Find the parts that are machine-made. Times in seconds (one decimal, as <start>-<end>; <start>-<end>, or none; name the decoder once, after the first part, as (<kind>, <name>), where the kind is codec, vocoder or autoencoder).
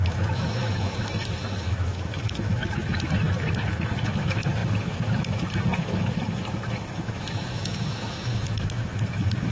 0.0-9.5 (autoencoder, DAC-VAE)